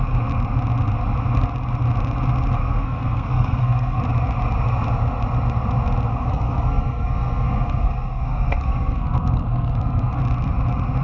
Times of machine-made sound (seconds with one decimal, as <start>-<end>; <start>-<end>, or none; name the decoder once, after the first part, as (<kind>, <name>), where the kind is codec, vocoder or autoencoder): 2.6-4.0 (codec, SNAC); 6.1-10.2